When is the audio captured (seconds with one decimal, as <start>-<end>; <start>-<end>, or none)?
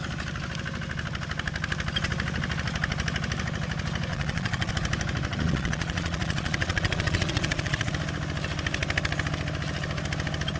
0.0-4.1; 4.7-5.3; 7.9-10.6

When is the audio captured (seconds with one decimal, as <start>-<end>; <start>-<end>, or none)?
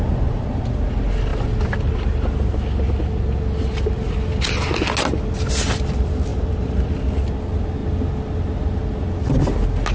0.0-6.3; 6.9-9.9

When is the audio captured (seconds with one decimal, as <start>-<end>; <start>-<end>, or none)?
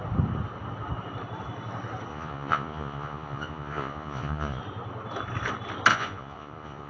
0.0-2.1; 4.6-5.9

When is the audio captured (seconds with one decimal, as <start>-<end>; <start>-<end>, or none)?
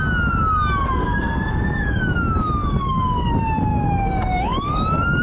0.0-1.0; 2.0-2.6; 3.3-3.7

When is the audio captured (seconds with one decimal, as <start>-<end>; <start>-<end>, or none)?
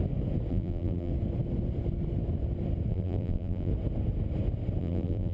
0.0-0.5; 1.1-2.9; 3.7-4.8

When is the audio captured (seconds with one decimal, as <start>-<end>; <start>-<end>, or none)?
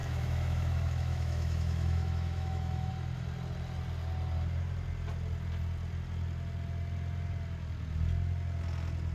2.9-9.1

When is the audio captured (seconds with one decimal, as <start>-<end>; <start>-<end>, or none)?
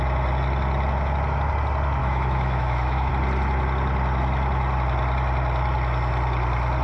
0.0-2.0; 3.1-6.8